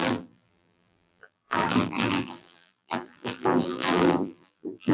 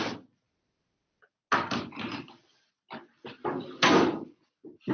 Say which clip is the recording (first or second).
second